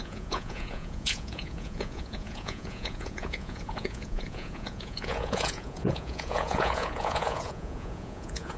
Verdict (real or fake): fake